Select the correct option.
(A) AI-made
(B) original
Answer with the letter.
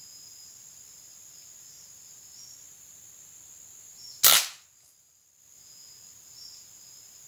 B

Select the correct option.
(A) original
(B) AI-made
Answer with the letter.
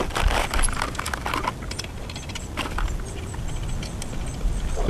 A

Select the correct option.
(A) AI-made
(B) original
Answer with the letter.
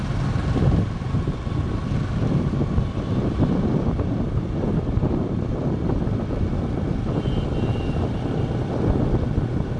B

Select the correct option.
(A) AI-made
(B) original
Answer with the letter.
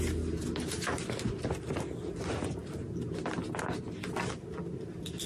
B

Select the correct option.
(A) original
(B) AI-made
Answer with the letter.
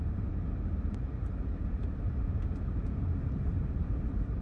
B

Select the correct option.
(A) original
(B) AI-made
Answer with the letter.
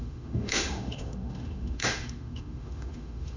B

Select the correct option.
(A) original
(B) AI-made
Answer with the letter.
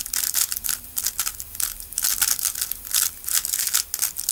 A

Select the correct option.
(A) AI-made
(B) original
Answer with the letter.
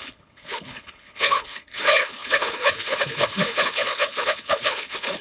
A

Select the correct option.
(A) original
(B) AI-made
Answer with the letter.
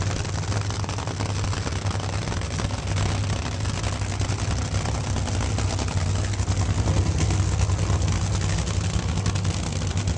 A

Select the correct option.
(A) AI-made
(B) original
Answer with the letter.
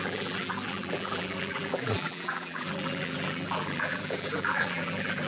A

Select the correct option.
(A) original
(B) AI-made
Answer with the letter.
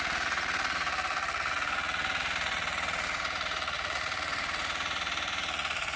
B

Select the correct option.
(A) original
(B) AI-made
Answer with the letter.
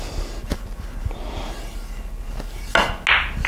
A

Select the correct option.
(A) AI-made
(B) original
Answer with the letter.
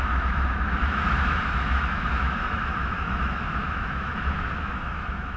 A